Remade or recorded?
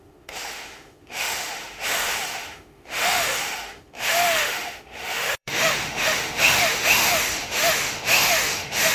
remade